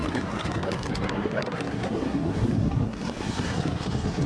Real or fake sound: fake